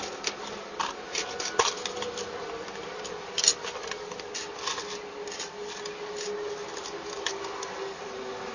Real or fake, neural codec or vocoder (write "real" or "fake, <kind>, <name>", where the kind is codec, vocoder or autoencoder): real